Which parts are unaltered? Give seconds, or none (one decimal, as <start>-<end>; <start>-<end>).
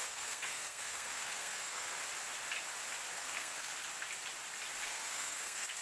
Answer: 2.0-3.1; 3.7-4.8